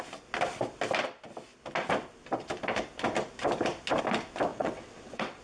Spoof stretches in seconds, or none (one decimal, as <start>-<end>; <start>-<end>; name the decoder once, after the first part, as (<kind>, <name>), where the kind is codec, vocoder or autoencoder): 4.5-5.4 (vocoder, WaveNeXt)